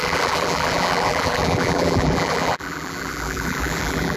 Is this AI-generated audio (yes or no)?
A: yes